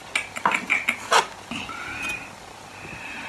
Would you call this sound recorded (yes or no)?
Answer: yes